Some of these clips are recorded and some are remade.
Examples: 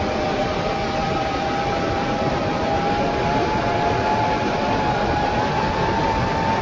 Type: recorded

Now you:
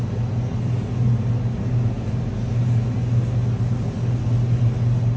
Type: recorded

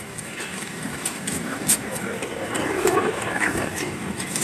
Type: remade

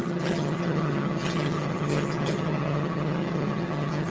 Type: remade